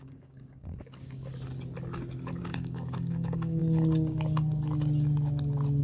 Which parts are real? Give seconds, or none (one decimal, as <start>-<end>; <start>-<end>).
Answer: 1.3-2.4; 3.6-5.8